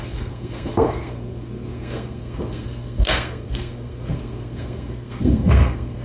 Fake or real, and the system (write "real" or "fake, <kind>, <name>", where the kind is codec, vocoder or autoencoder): fake, codec, SNAC